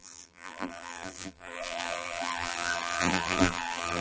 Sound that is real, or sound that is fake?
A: fake